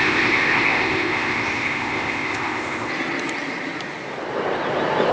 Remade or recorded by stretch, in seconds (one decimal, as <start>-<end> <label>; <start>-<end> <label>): 0.0-2.9 remade; 2.9-5.1 recorded